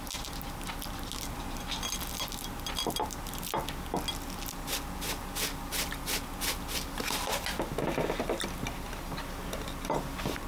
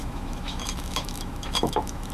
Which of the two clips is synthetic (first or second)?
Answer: second